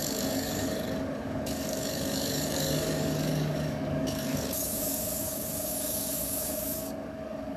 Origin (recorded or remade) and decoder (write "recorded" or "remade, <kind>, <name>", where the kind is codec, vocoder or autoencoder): remade, codec, DAC